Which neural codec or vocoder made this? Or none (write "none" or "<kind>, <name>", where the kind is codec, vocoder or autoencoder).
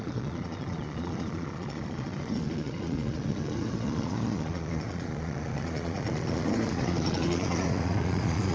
vocoder, Vocos